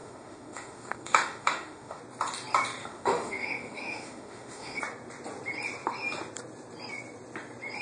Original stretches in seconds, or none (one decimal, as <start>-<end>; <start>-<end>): 2.0-2.8; 4.8-7.8